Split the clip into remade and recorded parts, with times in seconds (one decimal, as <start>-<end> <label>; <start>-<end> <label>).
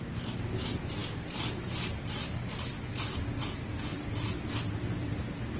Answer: 0.0-1.0 recorded; 1.0-4.4 remade; 4.4-5.6 recorded